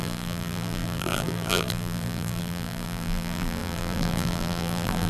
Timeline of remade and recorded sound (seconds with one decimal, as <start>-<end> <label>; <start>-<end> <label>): 0.0-5.1 remade